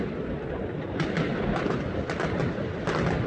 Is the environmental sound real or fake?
real